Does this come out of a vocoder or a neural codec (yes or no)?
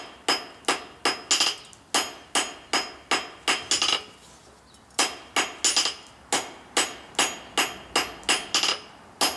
no